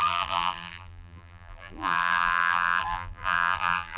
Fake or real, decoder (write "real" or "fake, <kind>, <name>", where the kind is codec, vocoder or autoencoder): fake, vocoder, BigVGAN v2